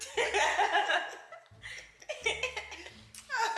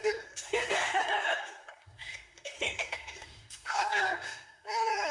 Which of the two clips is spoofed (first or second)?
second